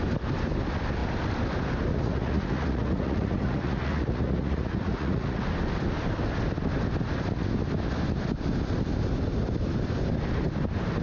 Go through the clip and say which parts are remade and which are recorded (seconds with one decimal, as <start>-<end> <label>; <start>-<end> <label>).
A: 0.0-1.9 recorded; 1.9-5.4 remade; 5.4-11.0 recorded